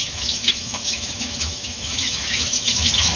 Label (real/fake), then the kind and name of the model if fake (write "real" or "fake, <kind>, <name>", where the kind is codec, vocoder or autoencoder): fake, autoencoder, DAC-VAE